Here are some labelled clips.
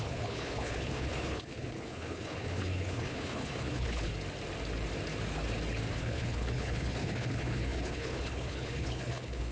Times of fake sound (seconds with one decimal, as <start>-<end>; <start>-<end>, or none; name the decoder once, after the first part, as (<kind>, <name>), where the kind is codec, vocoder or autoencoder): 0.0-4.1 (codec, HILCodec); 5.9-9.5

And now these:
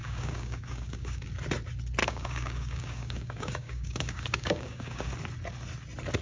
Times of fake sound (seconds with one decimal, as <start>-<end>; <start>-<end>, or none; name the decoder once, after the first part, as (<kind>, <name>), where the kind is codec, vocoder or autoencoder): 0.0-1.2 (codec, DAC); 2.0-5.1

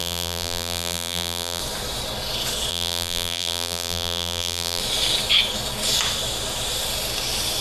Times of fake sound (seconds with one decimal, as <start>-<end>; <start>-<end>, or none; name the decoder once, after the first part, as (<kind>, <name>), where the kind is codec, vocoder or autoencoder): 0.0-1.6 (vocoder, BigVGAN v2); 2.7-4.8

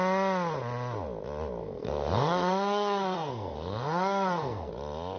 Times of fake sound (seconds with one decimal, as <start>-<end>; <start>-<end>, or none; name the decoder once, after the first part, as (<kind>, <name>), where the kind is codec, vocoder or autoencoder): 1.6-4.7 (codec, SNAC)